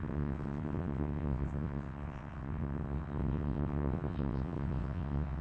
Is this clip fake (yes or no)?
yes